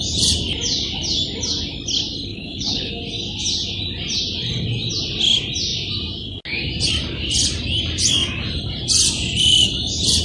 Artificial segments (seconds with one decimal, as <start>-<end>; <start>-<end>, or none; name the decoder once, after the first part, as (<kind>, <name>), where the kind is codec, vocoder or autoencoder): 2.3-2.9 (codec, HILCodec)